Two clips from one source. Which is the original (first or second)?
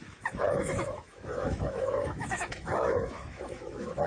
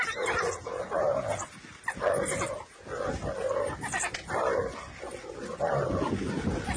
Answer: second